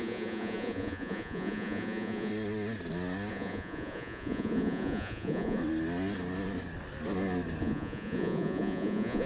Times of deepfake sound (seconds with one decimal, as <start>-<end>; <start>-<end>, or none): 0.0-2.3; 3.3-5.6; 7.6-9.3